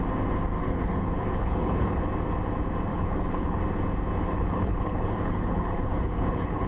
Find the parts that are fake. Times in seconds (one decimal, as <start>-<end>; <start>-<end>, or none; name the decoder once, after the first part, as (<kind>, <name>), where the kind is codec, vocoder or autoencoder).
0.6-2.0 (codec, HILCodec); 2.9-3.6; 4.3-6.7